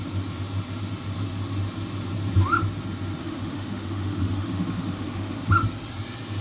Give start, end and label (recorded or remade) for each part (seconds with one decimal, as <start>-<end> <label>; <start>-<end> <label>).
0.0-3.2 recorded; 3.2-5.5 remade; 5.5-6.4 recorded